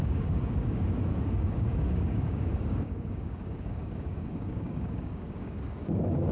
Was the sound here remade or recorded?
remade